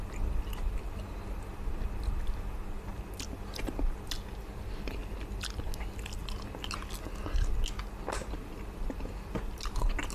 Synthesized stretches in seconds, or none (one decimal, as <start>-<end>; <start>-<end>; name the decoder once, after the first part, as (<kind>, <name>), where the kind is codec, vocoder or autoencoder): none